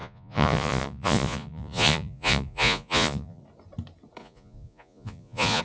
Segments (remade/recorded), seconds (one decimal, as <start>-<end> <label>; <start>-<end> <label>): 0.0-3.4 remade; 3.4-4.2 recorded; 4.2-5.6 remade